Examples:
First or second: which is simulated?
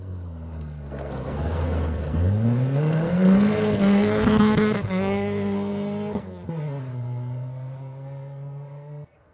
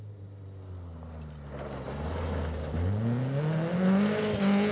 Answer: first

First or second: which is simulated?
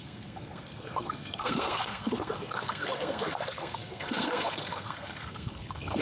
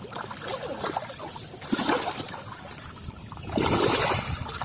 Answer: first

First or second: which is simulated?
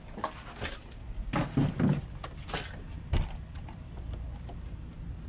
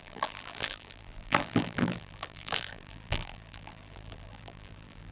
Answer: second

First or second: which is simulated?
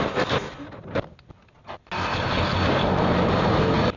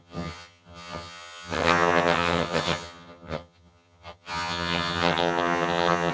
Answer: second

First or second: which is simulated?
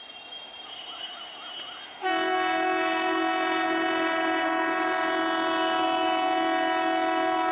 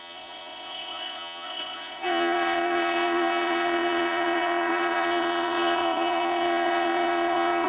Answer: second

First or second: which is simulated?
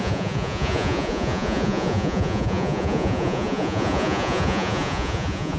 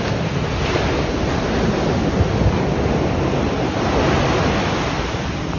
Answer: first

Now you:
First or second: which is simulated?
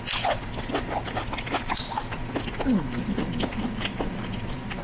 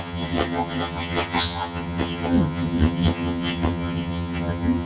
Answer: second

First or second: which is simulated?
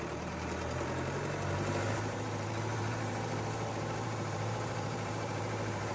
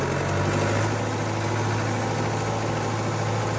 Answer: first